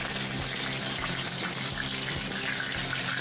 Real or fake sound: real